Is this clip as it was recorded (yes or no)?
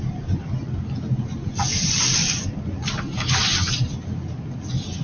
yes